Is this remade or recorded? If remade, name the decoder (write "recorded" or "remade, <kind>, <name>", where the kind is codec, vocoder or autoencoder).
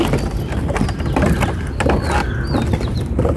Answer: recorded